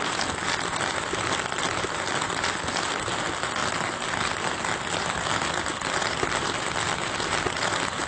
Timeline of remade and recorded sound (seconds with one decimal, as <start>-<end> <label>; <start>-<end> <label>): 0.0-8.1 recorded